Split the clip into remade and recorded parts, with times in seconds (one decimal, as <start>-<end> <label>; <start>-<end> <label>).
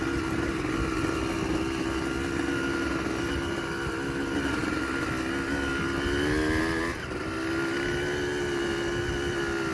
0.0-9.7 recorded